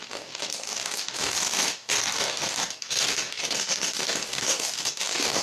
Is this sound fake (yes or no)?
yes